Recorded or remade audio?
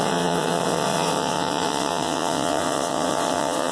remade